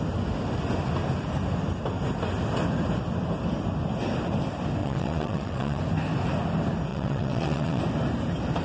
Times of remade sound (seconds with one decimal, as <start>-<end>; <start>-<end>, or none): 4.8-5.8; 6.9-7.8

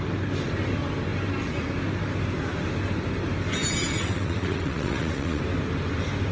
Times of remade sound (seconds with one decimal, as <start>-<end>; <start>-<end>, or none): 3.9-5.4